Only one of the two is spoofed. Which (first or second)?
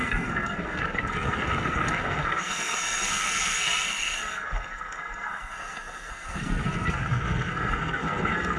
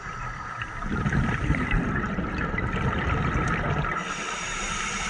first